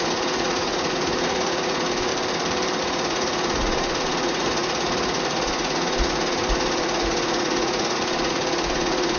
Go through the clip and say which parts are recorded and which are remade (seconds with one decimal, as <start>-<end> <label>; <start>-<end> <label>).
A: 0.0-2.1 remade; 2.1-2.8 recorded; 2.8-9.2 remade